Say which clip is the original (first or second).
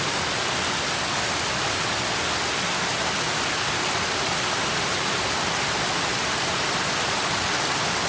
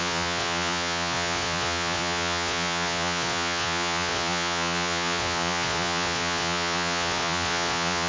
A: first